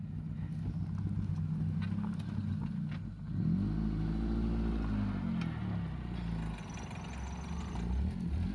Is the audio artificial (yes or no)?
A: no